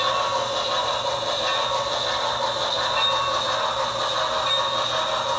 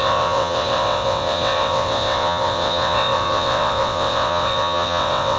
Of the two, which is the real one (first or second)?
first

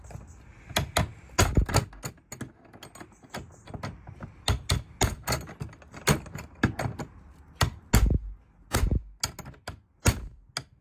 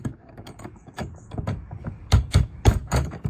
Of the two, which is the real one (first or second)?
first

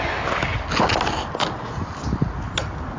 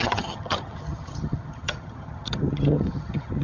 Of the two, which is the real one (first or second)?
first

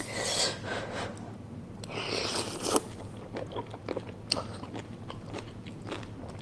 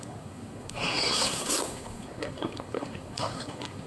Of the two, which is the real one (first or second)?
first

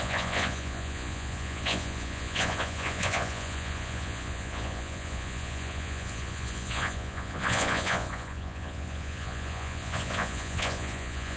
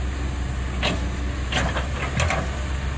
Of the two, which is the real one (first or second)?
second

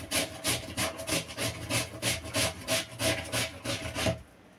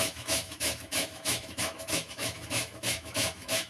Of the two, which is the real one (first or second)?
first